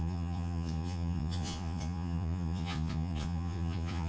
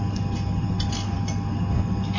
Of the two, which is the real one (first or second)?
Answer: second